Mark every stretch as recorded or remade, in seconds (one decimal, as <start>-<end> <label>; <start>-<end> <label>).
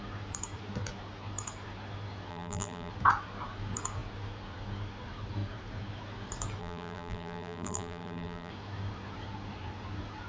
0.0-2.3 recorded; 2.3-2.9 remade; 2.9-6.6 recorded; 6.6-8.5 remade; 8.5-10.3 recorded